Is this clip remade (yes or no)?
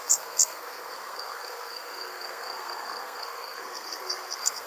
yes